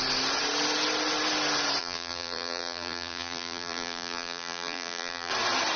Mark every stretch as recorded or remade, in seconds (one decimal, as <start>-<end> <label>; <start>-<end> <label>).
0.0-1.8 recorded; 1.8-5.3 remade; 5.3-5.8 recorded